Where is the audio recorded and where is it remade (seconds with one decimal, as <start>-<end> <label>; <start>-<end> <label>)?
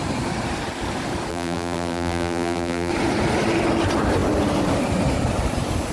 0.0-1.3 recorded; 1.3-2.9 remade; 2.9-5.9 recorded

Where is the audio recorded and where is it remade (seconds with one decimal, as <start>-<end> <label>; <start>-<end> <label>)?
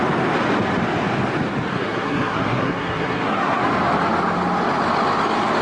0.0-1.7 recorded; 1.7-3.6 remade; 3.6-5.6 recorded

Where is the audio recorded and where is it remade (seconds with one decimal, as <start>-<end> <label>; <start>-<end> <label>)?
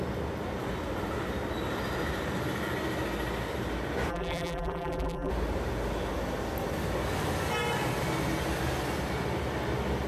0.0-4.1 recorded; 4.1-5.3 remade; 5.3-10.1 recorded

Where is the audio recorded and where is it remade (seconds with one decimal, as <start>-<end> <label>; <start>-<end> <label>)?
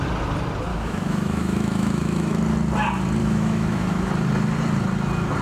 0.0-0.7 recorded; 0.7-2.4 remade; 2.4-3.2 recorded; 3.2-4.1 remade; 4.1-5.4 recorded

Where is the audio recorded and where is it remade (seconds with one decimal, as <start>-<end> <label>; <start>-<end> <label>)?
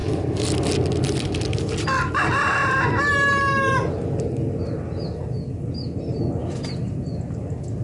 0.0-7.8 recorded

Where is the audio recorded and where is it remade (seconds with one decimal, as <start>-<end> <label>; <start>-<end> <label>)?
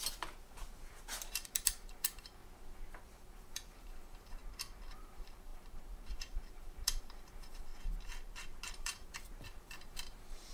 0.0-2.4 remade; 2.4-2.9 recorded; 2.9-4.4 remade; 4.4-4.9 recorded; 4.9-7.7 remade; 7.7-8.7 recorded; 8.7-10.5 remade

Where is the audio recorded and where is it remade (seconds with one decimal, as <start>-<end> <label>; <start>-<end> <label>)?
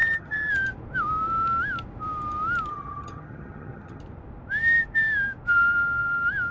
0.0-0.5 remade; 0.5-2.7 recorded; 2.7-4.0 remade; 4.0-6.5 recorded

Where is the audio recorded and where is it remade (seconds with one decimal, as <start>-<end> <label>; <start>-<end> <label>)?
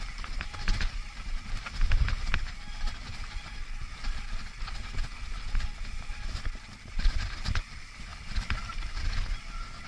0.0-9.9 recorded